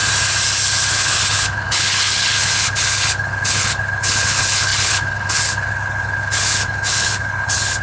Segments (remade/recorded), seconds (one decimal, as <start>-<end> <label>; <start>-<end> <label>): 0.0-0.9 recorded; 0.9-7.8 remade